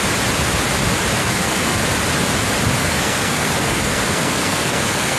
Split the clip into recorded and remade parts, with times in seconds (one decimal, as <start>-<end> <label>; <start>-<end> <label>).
0.0-1.2 recorded; 1.2-1.8 remade; 1.8-2.8 recorded; 2.8-5.2 remade